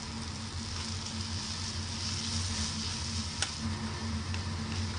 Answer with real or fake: real